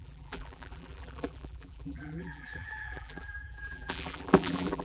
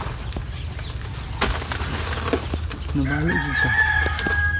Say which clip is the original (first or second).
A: second